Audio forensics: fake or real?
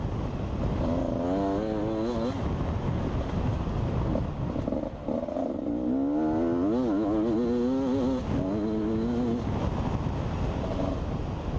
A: real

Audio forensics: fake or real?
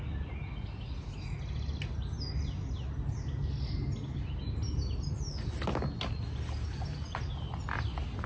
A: real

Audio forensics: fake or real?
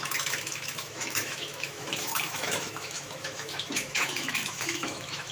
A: fake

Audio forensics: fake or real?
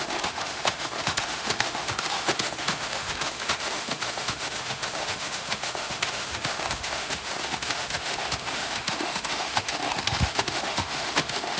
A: fake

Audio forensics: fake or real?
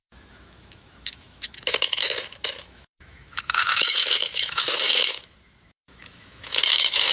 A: fake